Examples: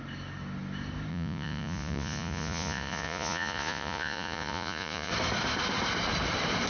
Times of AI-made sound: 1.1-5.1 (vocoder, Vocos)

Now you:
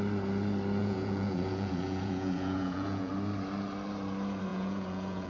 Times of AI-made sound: 0.8-3.1 (vocoder, Vocos); 4.5-5.3

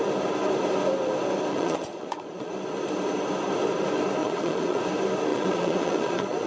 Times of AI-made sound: 1.5-2.5 (vocoder, Vocos); 4.2-4.8; 5.3-6.5